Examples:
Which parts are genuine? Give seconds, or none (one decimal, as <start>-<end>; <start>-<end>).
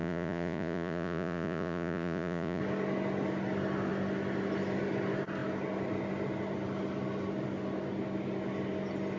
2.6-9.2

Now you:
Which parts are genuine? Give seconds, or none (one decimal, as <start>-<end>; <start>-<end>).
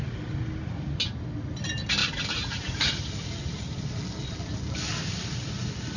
0.0-6.0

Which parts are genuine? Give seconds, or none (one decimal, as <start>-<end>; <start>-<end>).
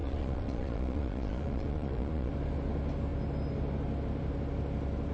2.3-5.1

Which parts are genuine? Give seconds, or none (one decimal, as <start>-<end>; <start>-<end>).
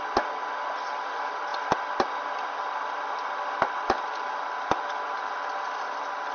0.0-6.3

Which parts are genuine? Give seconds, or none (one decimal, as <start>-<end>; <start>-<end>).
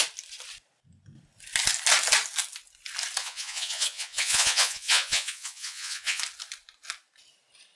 0.0-3.2; 6.2-7.8